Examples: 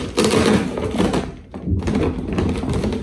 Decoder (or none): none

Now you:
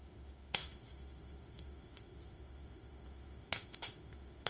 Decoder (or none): autoencoder, DAC-VAE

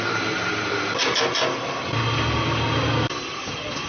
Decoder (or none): none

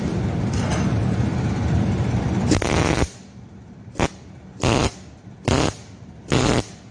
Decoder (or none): vocoder, BigVGAN v2